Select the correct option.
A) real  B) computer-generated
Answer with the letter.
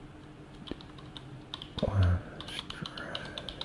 A